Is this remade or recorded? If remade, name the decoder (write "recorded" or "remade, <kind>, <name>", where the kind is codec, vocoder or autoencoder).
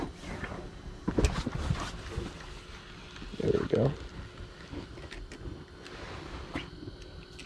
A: recorded